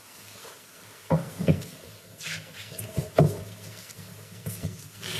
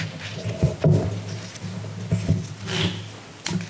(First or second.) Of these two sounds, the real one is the second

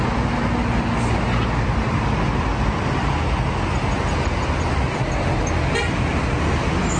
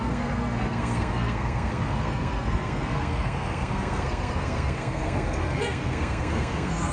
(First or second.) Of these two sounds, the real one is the first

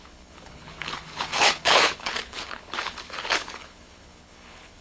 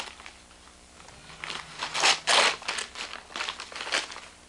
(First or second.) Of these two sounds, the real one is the second